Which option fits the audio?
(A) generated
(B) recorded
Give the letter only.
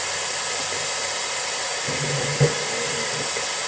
B